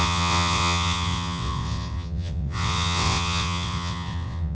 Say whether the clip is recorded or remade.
remade